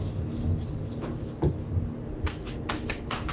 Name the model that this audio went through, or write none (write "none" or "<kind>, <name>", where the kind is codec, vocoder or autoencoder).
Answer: none